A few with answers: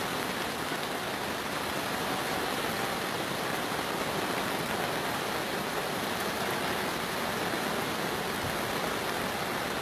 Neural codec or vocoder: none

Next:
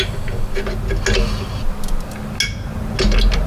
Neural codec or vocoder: none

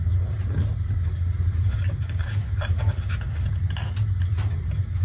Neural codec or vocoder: none